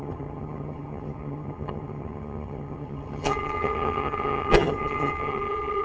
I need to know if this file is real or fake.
fake